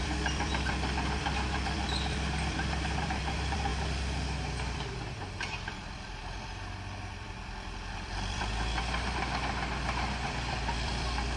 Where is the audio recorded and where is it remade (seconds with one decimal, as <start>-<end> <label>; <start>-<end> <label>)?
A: 0.0-11.4 remade